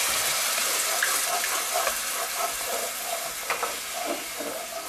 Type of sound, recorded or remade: recorded